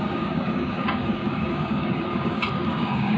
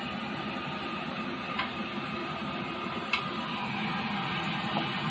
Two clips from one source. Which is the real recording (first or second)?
second